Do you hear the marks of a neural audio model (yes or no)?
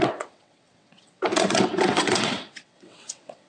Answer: yes